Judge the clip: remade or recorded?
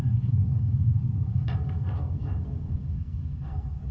remade